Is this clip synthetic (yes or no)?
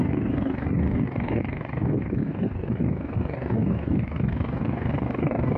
yes